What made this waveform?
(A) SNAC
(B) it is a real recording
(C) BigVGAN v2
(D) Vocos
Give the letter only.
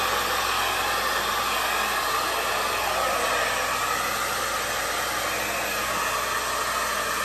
B